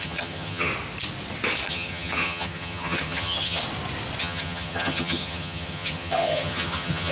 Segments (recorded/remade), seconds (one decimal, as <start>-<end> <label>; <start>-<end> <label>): 0.0-0.7 remade; 0.7-1.7 recorded; 1.7-3.6 remade; 3.6-4.2 recorded; 4.2-7.1 remade